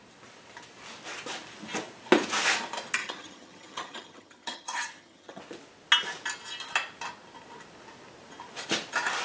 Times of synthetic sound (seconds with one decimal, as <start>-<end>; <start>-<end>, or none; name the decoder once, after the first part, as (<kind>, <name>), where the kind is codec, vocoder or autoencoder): 3.0-5.4 (vocoder, HiFi-GAN)